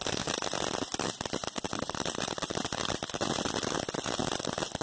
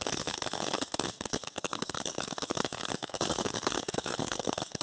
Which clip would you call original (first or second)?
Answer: first